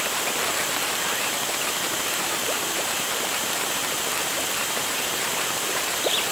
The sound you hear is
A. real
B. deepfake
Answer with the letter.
B